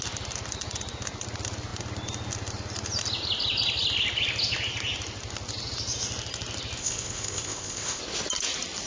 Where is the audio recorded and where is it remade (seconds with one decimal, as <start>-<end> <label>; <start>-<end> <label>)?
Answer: 0.0-6.8 recorded; 6.8-8.0 remade; 8.0-8.9 recorded